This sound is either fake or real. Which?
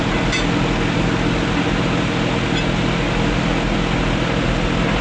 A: real